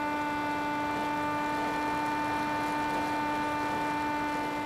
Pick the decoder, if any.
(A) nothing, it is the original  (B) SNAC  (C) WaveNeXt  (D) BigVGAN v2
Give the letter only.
A